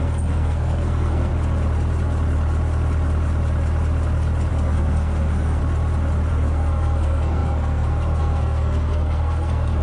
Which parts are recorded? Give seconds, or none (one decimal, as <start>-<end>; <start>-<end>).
1.3-4.5; 5.6-6.3

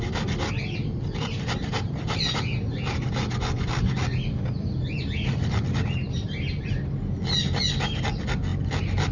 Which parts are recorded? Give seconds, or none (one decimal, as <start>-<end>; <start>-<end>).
0.0-9.1

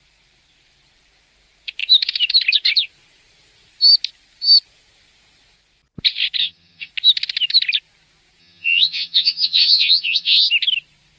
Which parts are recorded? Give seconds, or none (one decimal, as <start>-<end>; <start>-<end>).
0.0-6.4; 6.9-8.4; 10.4-11.2